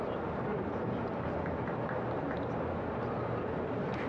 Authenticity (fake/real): real